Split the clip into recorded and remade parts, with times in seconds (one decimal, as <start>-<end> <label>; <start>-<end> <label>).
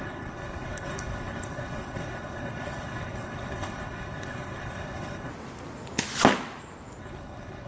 0.0-5.3 remade; 5.3-7.0 recorded; 7.0-7.7 remade